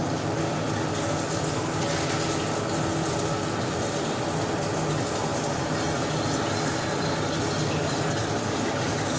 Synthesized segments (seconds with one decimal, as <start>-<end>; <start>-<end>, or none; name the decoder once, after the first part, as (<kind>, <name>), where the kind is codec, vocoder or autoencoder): 0.0-0.7 (vocoder, BigVGAN v2); 5.3-6.4